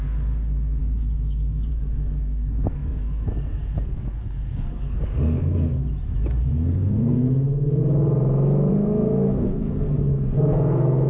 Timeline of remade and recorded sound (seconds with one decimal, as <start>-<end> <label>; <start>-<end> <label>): 0.0-5.8 remade; 5.8-6.4 recorded; 6.4-7.8 remade; 7.8-8.7 recorded; 8.7-11.1 remade